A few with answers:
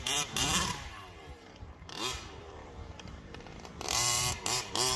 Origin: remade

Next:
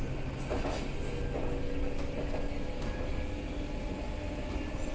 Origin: recorded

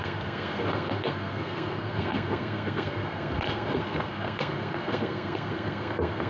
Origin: remade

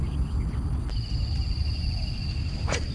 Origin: recorded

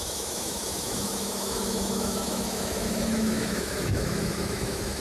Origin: remade